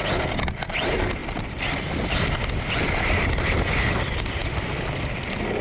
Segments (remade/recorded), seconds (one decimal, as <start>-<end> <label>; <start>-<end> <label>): 0.0-1.2 recorded; 1.2-3.4 remade; 3.4-4.4 recorded; 4.4-5.6 remade